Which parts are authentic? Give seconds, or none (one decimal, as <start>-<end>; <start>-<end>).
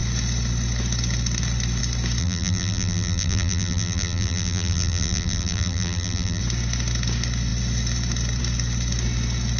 0.0-2.2; 6.4-9.6